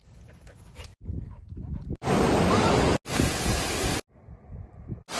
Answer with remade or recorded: recorded